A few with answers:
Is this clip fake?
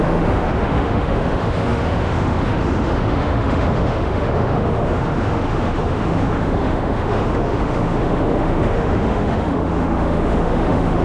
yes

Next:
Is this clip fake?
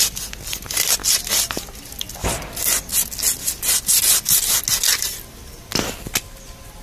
no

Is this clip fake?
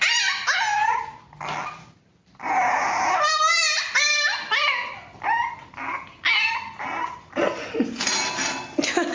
no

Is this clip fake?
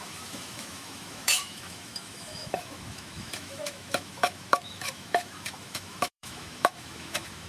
yes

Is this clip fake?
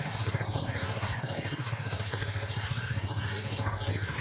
yes